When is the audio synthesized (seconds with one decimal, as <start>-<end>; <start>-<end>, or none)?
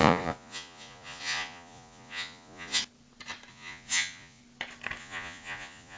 0.0-2.8; 3.5-4.4; 5.0-6.0